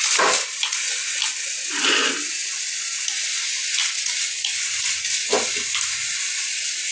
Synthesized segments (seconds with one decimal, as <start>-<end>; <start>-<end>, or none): none